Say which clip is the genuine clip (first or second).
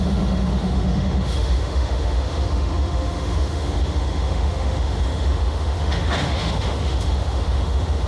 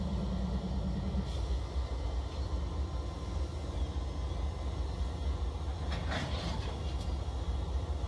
second